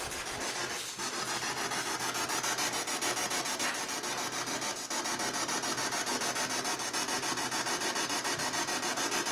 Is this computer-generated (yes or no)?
no